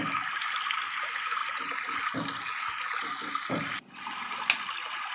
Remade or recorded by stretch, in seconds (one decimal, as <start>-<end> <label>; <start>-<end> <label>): 0.0-5.1 recorded